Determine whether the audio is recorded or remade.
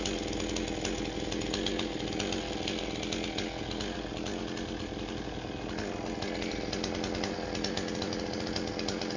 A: recorded